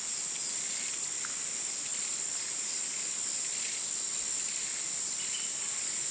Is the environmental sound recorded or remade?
recorded